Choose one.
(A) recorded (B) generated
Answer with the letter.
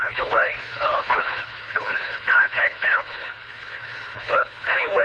B